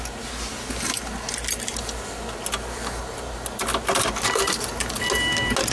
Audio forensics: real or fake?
real